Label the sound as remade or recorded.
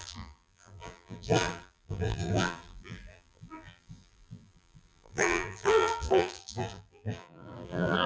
remade